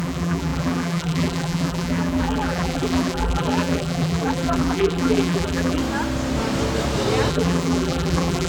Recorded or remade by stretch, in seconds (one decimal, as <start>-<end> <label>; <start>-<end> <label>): 0.0-5.8 remade; 5.8-7.3 recorded; 7.3-8.5 remade